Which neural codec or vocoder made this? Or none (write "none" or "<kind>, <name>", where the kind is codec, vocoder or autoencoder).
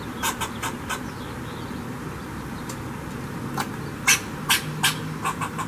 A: none